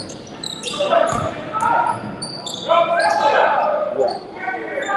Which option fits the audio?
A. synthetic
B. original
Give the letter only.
B